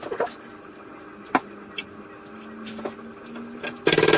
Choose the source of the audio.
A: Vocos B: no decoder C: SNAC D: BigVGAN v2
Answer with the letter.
B